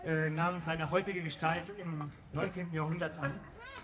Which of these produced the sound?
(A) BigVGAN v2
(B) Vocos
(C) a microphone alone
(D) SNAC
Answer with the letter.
D